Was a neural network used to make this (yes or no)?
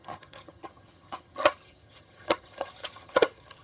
yes